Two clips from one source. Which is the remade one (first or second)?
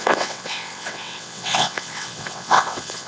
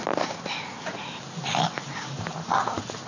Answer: first